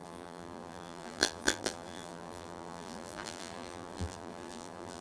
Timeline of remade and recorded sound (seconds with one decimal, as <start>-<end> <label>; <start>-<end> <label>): 0.0-5.0 remade